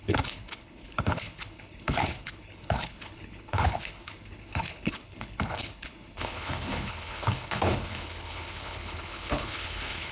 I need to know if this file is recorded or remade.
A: remade